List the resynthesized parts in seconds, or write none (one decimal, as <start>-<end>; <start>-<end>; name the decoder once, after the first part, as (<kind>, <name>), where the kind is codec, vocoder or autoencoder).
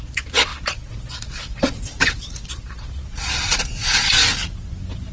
0.0-4.2 (vocoder, Vocos)